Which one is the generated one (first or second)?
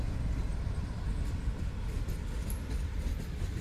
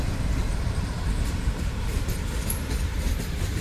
second